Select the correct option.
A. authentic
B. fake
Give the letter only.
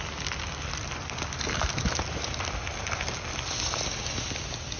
A